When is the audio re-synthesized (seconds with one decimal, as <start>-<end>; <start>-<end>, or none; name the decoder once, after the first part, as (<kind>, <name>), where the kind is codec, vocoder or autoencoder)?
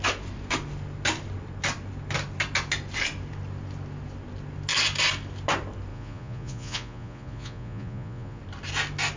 5.9-8.4 (vocoder, Vocos)